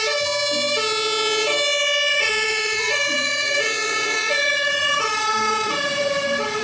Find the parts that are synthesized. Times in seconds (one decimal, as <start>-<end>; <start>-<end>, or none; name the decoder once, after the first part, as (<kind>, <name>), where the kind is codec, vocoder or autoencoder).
2.1-6.1 (vocoder, Vocos)